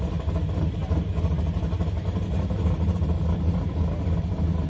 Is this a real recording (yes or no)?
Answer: yes